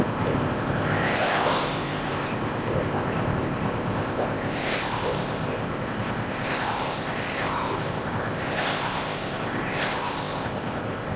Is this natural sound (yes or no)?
no